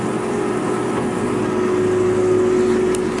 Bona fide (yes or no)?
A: yes